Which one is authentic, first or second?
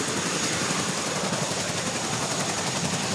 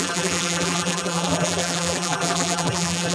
first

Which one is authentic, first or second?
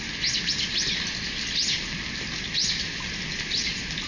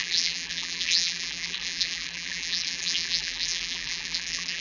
first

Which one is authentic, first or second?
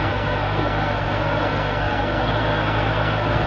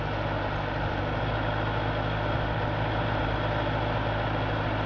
second